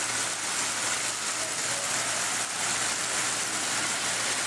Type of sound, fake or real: real